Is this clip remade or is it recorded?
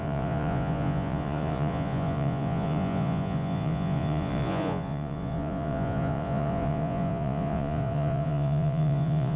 remade